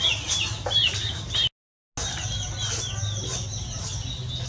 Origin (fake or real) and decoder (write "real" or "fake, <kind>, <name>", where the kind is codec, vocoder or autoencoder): real